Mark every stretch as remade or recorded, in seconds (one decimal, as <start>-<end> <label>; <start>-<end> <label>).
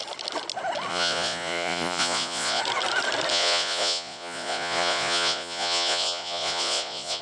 0.0-0.9 recorded; 0.9-2.6 remade; 2.6-3.3 recorded; 3.3-7.2 remade